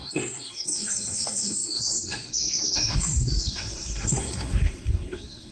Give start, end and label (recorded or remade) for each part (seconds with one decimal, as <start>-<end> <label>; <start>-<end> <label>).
0.0-5.5 remade